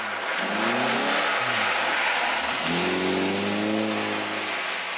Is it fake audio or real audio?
real